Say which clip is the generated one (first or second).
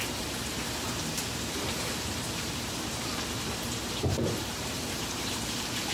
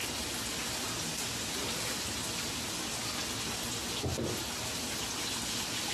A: first